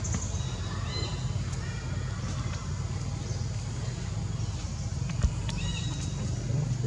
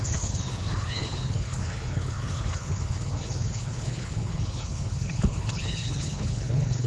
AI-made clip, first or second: second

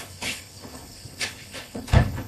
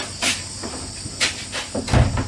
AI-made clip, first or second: first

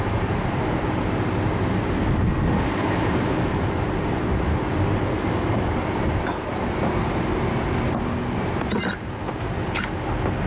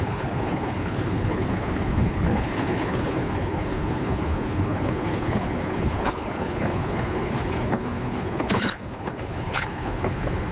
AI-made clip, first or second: second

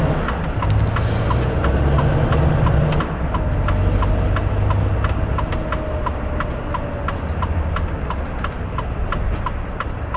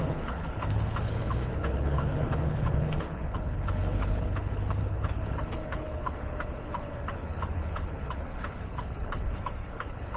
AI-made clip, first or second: second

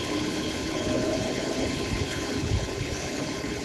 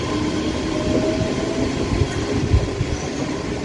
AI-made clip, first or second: first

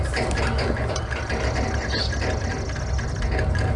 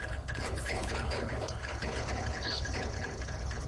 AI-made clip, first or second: second